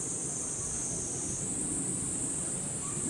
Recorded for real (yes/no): yes